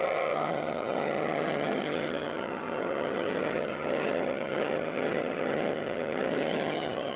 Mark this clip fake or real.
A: fake